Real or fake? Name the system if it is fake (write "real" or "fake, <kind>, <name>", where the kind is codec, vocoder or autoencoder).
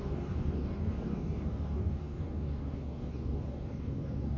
fake, codec, DAC